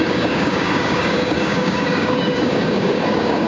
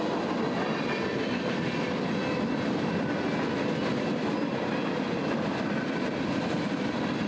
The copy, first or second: first